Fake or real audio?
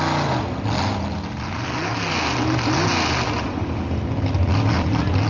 real